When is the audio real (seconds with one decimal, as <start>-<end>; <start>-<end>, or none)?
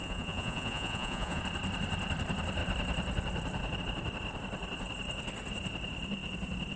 1.4-6.8